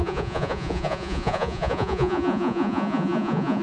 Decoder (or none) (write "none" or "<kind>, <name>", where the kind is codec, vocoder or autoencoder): vocoder, Vocos